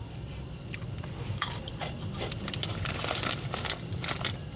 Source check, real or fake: real